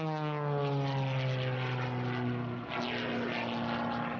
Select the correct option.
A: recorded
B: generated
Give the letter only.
A